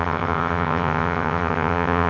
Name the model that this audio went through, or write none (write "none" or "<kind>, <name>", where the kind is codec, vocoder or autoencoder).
vocoder, HiFi-GAN